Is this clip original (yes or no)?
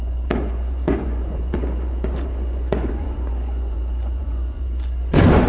no